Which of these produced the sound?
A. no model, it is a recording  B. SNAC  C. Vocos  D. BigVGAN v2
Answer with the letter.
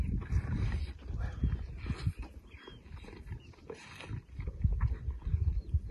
A